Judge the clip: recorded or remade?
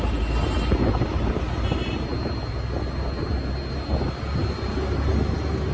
recorded